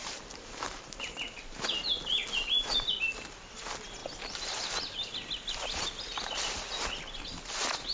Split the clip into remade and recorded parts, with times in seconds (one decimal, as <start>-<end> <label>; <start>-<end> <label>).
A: 0.0-1.0 remade; 1.0-7.9 recorded